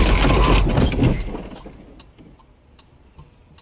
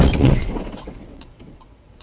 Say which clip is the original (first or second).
first